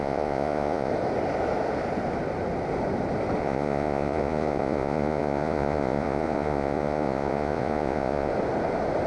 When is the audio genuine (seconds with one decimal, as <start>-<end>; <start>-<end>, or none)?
0.9-3.4; 8.3-9.1